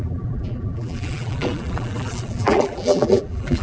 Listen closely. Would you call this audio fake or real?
fake